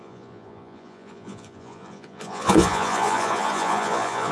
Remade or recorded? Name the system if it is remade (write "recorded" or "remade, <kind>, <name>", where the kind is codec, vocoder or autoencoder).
remade, vocoder, Vocos